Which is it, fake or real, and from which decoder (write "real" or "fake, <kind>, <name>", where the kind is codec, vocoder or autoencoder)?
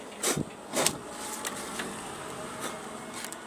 real